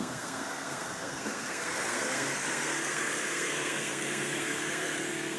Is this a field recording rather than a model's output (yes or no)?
no